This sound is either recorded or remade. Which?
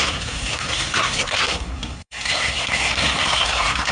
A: remade